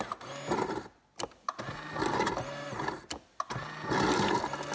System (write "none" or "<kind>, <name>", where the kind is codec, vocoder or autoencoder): none